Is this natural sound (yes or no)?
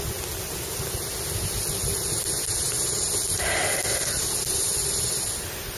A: yes